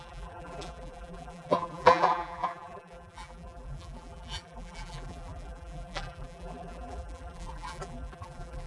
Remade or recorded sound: remade